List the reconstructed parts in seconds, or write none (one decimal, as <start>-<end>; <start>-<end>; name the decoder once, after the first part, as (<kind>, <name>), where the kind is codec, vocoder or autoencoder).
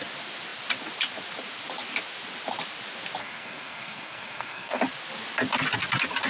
3.2-4.8 (codec, SNAC)